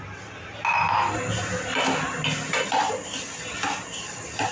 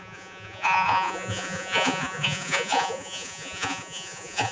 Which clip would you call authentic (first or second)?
first